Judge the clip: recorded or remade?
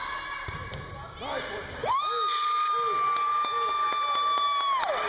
recorded